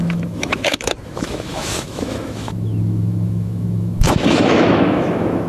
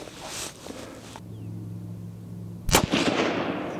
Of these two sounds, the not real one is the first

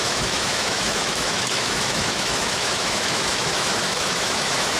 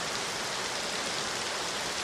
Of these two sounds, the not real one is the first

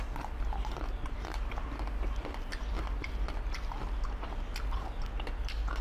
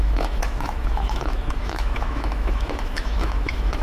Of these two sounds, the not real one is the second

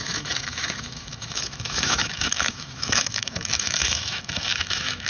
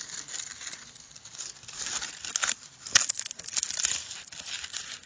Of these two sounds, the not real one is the first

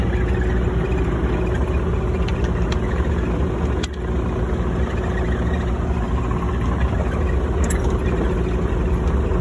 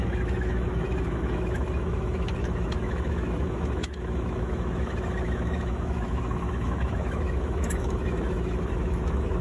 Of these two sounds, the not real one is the second